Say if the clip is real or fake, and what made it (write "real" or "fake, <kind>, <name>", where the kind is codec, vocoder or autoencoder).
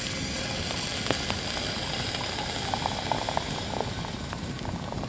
real